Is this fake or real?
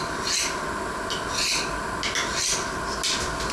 real